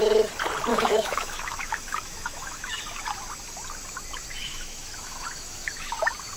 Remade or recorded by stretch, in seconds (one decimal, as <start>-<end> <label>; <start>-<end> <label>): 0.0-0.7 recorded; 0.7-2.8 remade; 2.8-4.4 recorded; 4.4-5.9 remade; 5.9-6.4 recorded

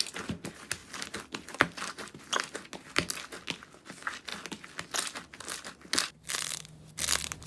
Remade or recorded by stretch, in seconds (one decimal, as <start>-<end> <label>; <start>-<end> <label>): 0.0-0.8 recorded; 0.8-2.2 remade; 2.2-7.5 recorded

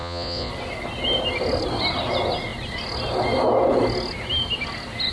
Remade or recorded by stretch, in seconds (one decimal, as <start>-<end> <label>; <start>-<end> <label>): 0.0-0.5 remade; 0.5-5.1 recorded

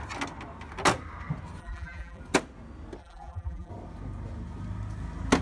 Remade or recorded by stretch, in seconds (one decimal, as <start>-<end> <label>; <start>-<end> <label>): 0.0-1.6 recorded; 1.6-2.2 remade; 2.2-3.0 recorded; 3.0-3.7 remade; 3.7-5.4 recorded

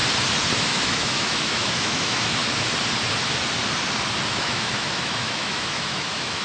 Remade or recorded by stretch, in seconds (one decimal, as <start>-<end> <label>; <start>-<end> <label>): 0.0-0.6 recorded; 0.6-2.4 remade; 2.4-4.3 recorded; 4.3-6.4 remade